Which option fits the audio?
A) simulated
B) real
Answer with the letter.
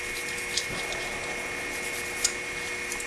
B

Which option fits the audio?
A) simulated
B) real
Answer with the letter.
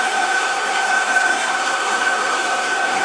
A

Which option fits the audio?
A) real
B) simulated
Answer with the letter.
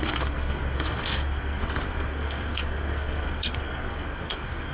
B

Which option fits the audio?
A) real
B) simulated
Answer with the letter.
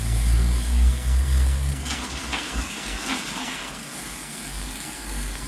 B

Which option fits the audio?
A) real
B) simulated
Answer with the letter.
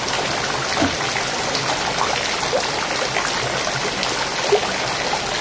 A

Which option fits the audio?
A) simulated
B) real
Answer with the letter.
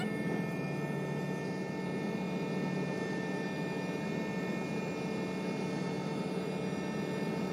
B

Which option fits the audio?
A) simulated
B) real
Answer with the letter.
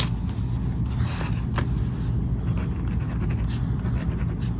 B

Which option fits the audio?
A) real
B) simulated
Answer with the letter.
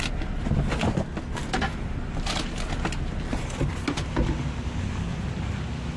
A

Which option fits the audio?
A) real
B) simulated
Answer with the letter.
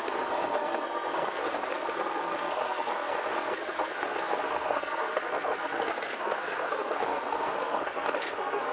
B